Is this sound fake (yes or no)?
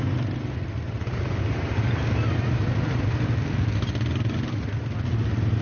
no